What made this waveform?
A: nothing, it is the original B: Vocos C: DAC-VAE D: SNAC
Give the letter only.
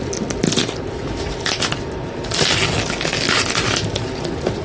A